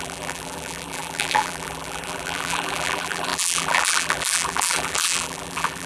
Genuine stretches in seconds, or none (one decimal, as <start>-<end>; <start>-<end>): none